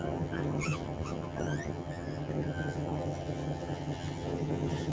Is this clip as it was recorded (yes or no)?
no